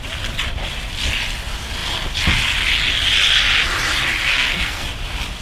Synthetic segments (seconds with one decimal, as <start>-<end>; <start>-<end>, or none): 4.3-4.9

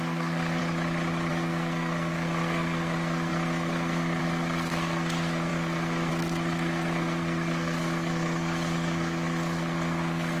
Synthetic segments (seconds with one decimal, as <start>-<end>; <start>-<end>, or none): 0.0-0.6; 1.3-10.4